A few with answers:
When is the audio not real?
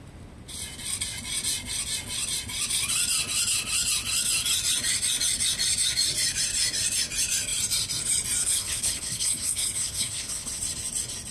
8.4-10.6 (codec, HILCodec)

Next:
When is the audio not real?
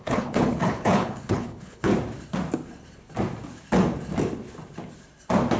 0.0-1.9 (codec, HILCodec)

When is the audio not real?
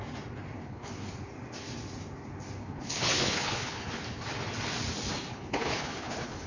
0.6-1.1 (codec, HILCodec); 2.6-3.9; 5.3-6.5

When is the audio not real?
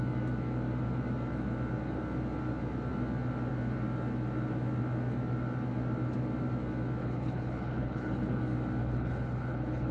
7.0-8.4 (codec, HILCodec); 8.8-9.9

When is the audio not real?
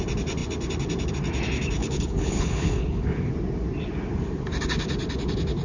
1.8-3.3 (codec, HILCodec)